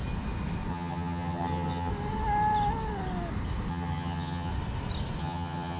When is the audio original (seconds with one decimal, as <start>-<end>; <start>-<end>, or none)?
0.0-0.7; 1.9-3.7; 4.5-5.2